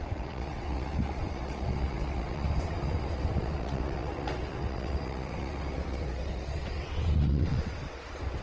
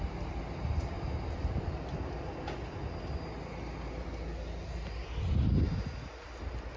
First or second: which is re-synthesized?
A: first